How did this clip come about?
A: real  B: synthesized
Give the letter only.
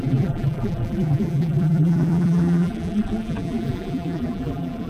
B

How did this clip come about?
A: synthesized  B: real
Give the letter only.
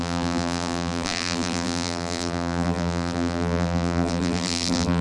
A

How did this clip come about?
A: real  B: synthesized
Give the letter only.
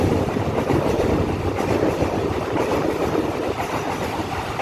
B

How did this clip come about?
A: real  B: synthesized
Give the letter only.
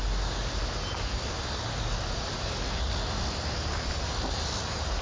A